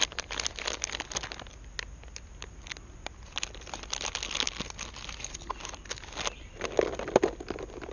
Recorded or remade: recorded